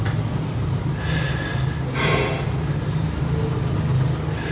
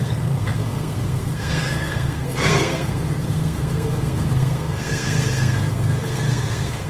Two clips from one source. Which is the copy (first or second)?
second